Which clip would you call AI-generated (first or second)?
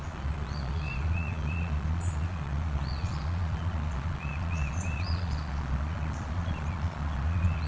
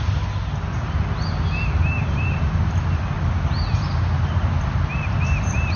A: first